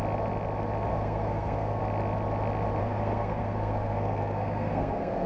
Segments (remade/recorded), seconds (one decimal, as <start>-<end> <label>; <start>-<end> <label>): 0.0-0.9 recorded; 0.9-1.8 remade; 1.8-2.8 recorded; 2.8-5.3 remade